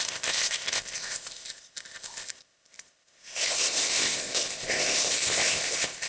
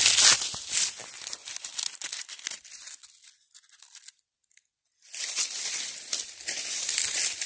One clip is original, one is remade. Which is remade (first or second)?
first